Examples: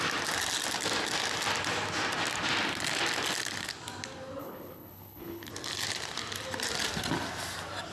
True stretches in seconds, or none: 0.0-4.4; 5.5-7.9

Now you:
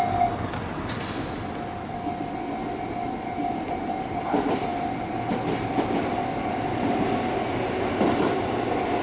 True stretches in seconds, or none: 0.0-9.0

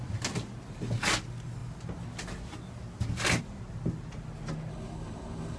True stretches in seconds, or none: 0.0-4.7

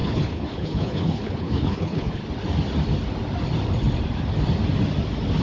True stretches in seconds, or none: 2.2-5.4

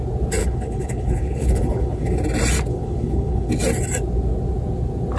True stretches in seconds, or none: 0.0-0.4; 2.2-2.7; 3.5-5.2